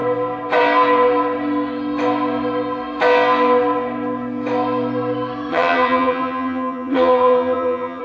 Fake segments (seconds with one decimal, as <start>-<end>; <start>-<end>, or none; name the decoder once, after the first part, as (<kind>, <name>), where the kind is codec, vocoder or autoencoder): 5.5-8.0 (vocoder, HiFi-GAN)